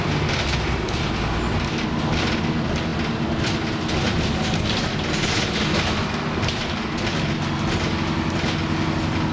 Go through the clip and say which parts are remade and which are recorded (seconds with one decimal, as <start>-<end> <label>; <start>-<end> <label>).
0.0-9.3 recorded